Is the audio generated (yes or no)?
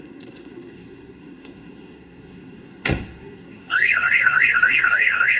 yes